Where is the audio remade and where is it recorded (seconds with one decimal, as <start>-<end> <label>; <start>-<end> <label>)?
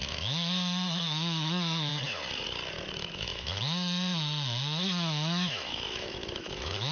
0.0-1.9 remade; 1.9-2.9 recorded; 2.9-6.9 remade